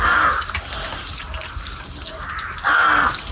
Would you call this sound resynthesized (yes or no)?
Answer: no